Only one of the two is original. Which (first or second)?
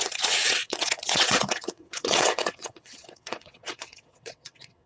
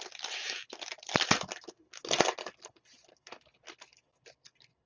second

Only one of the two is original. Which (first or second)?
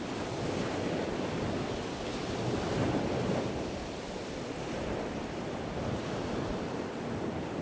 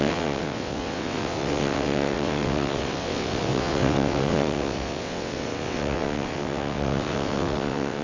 first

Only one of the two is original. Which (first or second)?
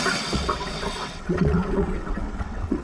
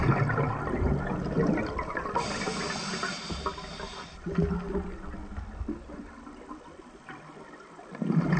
second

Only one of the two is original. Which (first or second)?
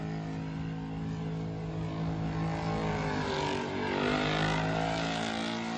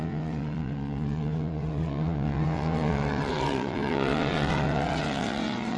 first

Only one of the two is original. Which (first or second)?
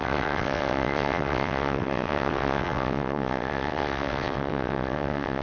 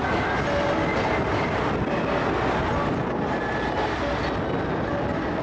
second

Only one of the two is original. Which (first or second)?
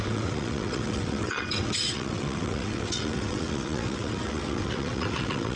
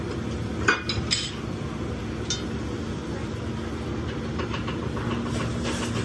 second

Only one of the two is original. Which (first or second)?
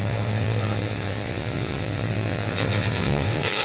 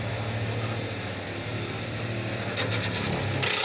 second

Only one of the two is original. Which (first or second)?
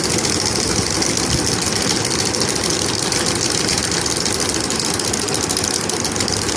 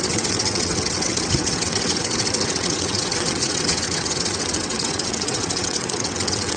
first